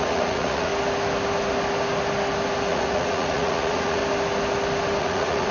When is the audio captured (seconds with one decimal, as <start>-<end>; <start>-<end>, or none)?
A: 0.7-2.7; 4.0-5.0